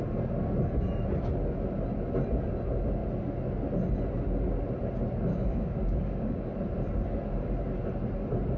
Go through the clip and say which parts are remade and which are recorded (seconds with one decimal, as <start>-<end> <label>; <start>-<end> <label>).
0.0-5.3 recorded; 5.3-6.5 remade; 6.5-8.6 recorded

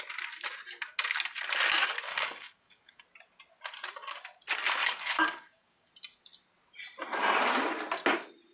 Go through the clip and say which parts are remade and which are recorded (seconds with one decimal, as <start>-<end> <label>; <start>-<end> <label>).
0.0-2.1 recorded; 2.1-3.0 remade; 3.0-4.8 recorded; 4.8-5.9 remade; 5.9-8.5 recorded

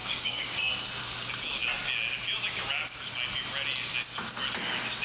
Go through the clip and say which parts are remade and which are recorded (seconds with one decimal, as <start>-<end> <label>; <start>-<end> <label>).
0.0-0.7 remade; 0.7-5.0 recorded

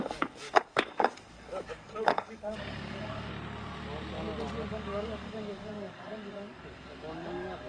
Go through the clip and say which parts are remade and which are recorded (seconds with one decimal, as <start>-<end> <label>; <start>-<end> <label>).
0.0-3.3 remade; 3.3-4.7 recorded; 4.7-7.7 remade

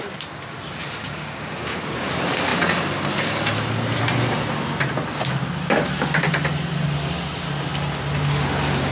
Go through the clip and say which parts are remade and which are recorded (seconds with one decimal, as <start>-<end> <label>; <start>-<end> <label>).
0.0-1.0 recorded; 1.0-2.1 remade; 2.1-8.9 recorded

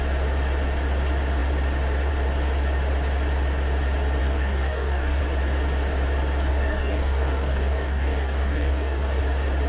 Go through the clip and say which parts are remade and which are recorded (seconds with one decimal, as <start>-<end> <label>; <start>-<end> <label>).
0.0-4.2 recorded; 4.2-5.2 remade; 5.2-6.5 recorded; 6.5-9.2 remade; 9.2-9.7 recorded

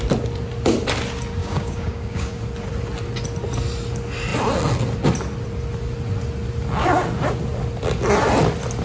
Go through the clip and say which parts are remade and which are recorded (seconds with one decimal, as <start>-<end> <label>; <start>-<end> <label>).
0.0-1.4 recorded; 1.4-2.4 remade; 2.4-8.8 recorded